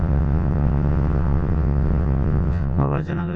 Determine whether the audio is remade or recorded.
remade